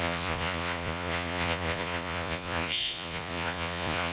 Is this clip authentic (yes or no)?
no